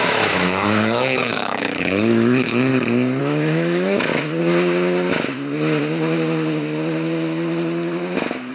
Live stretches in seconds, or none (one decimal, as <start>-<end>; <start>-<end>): 2.7-3.2; 4.1-8.5